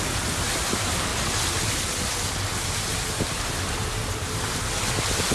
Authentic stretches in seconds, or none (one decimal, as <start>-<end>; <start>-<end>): 0.0-5.3